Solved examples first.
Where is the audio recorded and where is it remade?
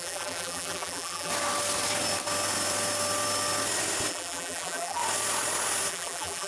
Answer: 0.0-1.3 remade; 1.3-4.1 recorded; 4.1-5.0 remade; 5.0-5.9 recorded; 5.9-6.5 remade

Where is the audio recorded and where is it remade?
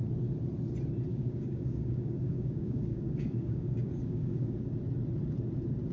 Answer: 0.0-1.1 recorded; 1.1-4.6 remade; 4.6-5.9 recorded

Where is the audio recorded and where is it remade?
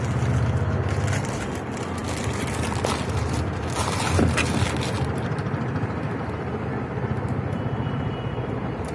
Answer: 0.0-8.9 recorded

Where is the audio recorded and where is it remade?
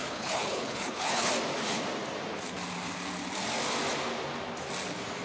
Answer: 0.0-1.3 remade; 1.3-5.2 recorded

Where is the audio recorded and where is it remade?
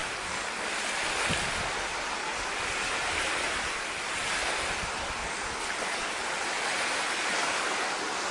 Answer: 0.0-8.3 recorded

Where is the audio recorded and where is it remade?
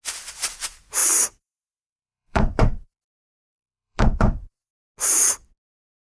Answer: 0.0-1.0 recorded; 1.0-4.7 remade; 4.7-6.1 recorded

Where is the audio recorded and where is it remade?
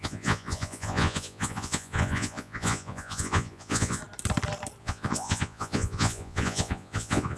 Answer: 0.0-4.0 remade; 4.0-4.8 recorded; 4.8-7.4 remade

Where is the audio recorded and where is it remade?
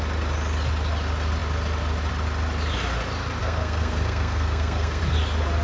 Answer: 0.0-3.4 recorded; 3.4-5.0 remade; 5.0-5.6 recorded